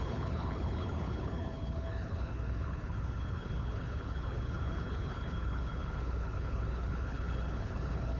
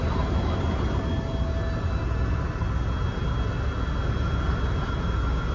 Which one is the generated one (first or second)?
first